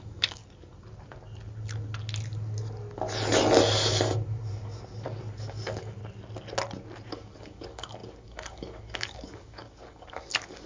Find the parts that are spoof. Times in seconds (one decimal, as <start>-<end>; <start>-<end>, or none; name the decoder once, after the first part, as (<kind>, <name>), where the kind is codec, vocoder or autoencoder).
0.0-0.4 (codec, DAC); 5.3-6.0; 7.1-10.7